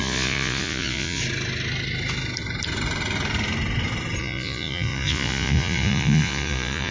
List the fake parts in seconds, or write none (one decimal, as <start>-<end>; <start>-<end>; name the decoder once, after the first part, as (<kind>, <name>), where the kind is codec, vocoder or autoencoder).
0.0-1.2 (vocoder, Vocos); 4.2-6.9